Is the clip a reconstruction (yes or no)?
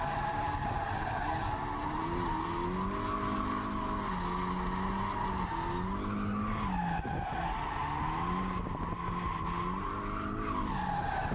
no